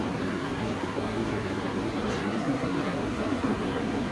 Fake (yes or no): yes